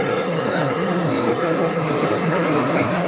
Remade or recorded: remade